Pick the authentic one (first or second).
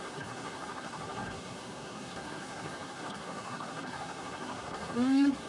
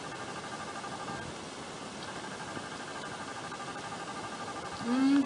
second